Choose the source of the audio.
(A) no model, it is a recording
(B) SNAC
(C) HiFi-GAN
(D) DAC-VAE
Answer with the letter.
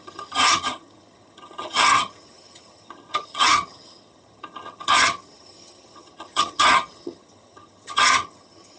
C